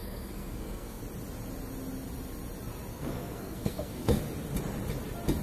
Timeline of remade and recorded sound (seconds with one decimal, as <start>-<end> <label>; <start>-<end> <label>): 0.0-1.0 remade; 1.0-2.9 recorded; 2.9-4.2 remade; 4.2-5.4 recorded